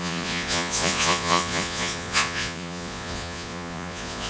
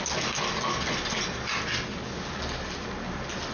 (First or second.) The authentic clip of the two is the second